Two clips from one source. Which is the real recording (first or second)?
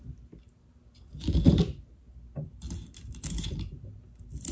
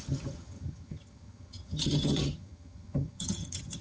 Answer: first